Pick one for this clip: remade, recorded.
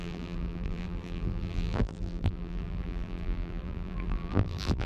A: remade